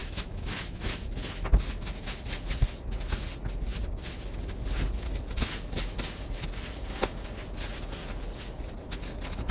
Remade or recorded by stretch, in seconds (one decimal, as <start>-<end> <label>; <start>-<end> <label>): 0.0-1.0 remade; 1.0-9.5 recorded